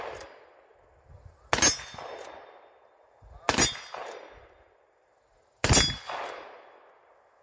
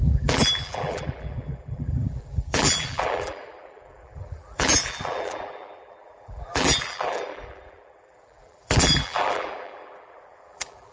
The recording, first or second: first